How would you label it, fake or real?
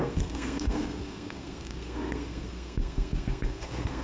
fake